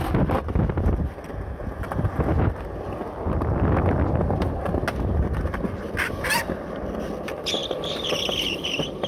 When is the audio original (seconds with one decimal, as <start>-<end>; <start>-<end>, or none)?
0.0-9.1